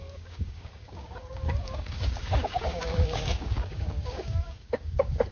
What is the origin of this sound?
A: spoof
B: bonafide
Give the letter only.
A